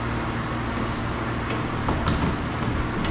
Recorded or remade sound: recorded